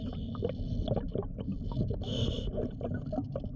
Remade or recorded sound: recorded